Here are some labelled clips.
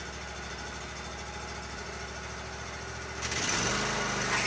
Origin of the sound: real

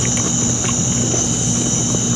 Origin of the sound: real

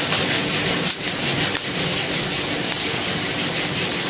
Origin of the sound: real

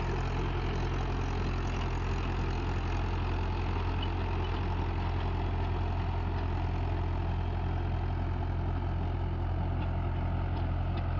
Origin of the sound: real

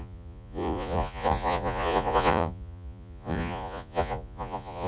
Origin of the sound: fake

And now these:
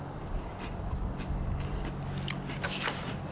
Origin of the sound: real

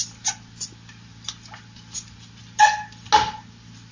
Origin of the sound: real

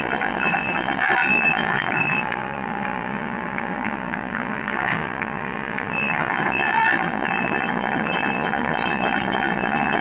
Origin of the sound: fake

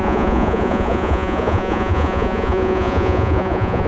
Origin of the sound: fake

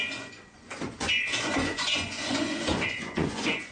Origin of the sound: fake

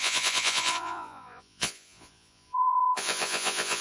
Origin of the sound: fake